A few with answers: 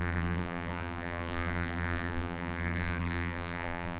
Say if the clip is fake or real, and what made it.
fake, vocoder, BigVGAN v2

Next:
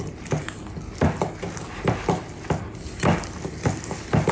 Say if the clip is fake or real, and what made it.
real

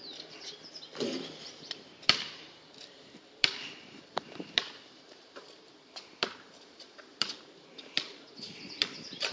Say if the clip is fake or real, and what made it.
fake, vocoder, BigVGAN v2